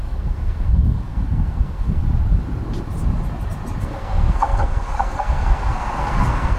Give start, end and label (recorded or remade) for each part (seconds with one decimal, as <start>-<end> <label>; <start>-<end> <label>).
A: 0.0-2.0 remade; 2.0-3.8 recorded; 3.8-6.6 remade